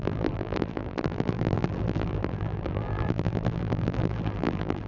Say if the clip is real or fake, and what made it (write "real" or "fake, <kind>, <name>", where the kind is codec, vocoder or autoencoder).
fake, vocoder, BigVGAN v2